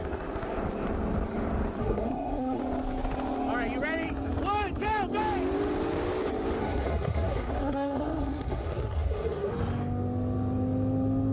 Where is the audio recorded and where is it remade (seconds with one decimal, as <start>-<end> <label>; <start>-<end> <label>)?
0.0-1.8 recorded; 1.8-2.6 remade; 2.6-6.6 recorded; 6.6-9.5 remade; 9.5-11.3 recorded